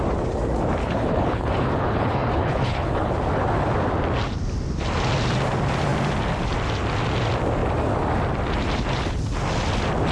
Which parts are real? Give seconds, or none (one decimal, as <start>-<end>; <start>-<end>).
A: 0.0-0.8; 3.1-10.1